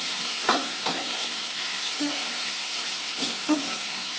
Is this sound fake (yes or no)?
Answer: yes